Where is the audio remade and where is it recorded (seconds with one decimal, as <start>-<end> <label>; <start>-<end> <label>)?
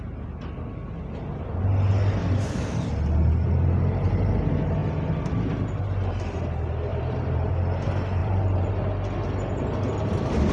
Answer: 0.0-2.2 recorded; 2.2-2.9 remade; 2.9-6.9 recorded; 6.9-7.5 remade; 7.5-8.2 recorded; 8.2-8.7 remade; 8.7-10.5 recorded